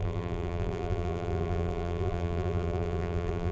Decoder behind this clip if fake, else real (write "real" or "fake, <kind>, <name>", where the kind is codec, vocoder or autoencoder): fake, vocoder, BigVGAN v2